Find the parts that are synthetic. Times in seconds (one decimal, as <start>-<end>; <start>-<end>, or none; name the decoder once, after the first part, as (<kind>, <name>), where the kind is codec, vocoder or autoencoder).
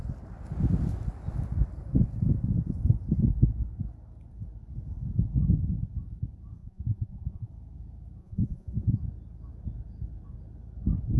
6.6-7.5 (vocoder, Vocos); 8.2-9.0